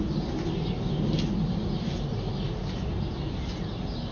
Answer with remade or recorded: recorded